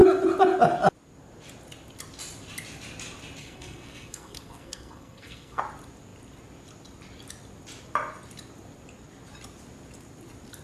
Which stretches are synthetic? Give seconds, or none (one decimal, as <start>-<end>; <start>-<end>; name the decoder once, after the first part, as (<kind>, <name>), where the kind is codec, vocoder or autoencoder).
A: 3.4-5.6 (codec, SNAC)